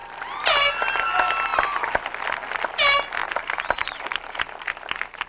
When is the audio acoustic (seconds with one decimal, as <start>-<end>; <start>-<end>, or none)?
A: 0.0-3.2; 4.4-5.3

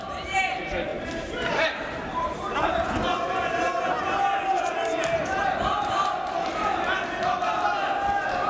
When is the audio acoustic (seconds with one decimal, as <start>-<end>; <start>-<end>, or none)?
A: 0.0-0.9; 2.8-8.5

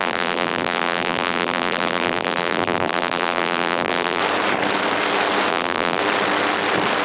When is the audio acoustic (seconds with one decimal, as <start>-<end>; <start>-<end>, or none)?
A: 4.2-5.5; 6.0-7.0

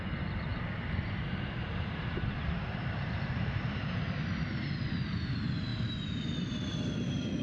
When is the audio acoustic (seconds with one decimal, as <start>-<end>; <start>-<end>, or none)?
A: 0.0-0.5; 4.0-7.4

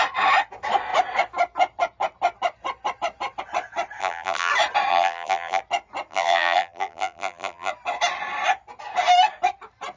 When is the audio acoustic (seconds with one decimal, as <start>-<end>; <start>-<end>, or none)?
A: 0.0-4.0; 4.5-4.9; 5.6-6.1; 7.7-10.0

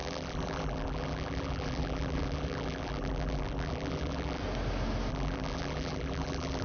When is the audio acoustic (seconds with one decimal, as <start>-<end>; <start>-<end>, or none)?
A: 4.4-5.1

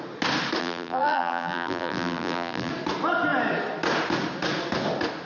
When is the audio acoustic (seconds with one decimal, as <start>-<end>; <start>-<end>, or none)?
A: 0.0-0.6; 2.7-5.3